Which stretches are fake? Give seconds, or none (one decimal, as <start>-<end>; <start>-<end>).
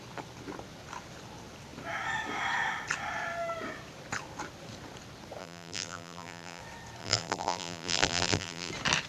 5.4-6.6; 7.0-8.7